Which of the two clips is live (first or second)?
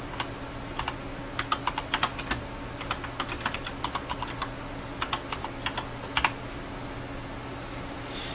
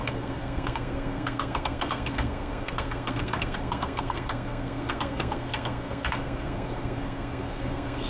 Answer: first